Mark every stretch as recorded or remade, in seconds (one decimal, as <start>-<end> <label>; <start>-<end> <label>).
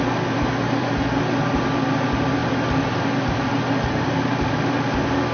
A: 0.0-5.3 recorded